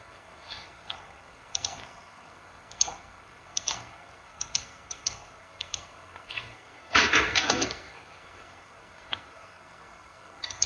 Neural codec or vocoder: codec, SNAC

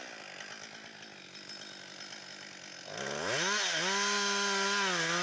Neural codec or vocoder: none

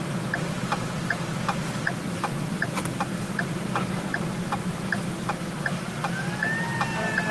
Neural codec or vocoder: none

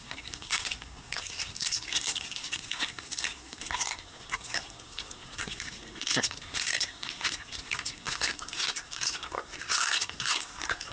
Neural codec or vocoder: codec, SNAC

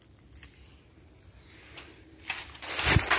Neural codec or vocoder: none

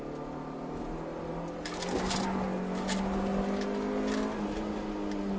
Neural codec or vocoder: none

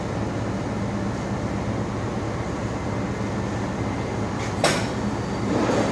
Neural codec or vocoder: none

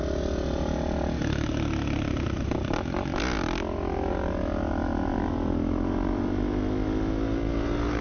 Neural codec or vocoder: none